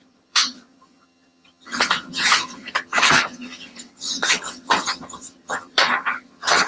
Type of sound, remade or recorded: remade